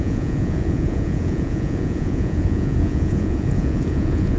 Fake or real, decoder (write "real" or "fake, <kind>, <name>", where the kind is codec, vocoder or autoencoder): fake, vocoder, Vocos